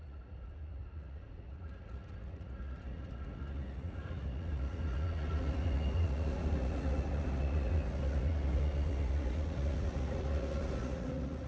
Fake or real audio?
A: fake